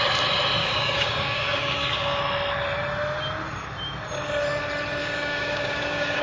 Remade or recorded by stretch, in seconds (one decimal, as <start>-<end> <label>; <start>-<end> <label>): 0.0-0.6 recorded; 0.6-2.2 remade; 2.2-5.0 recorded; 5.0-6.2 remade